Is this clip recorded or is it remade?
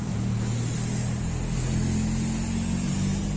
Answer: recorded